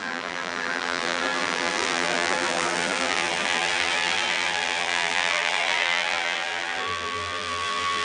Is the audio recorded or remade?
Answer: remade